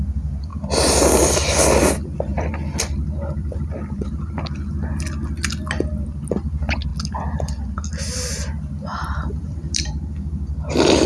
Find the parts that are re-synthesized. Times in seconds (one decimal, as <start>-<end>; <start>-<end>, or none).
8.9-9.9